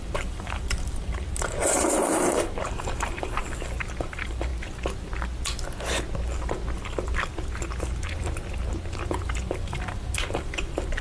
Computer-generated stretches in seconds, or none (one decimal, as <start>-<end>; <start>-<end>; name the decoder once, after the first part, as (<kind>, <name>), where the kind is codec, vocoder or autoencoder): 0.0-3.4 (vocoder, BigVGAN v2); 4.0-4.5; 9.5-11.0